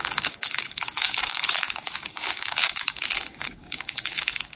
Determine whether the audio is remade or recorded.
remade